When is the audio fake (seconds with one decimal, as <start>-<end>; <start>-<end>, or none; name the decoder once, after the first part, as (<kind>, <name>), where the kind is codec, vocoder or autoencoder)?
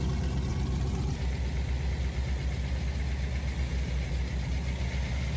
none